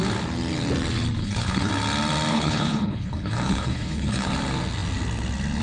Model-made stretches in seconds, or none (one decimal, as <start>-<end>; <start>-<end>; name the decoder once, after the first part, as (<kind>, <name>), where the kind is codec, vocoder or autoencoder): 1.2-1.7 (codec, HILCodec); 2.3-4.3